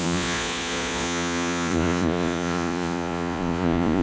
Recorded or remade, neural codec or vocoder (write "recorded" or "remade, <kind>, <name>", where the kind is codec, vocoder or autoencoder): remade, vocoder, Vocos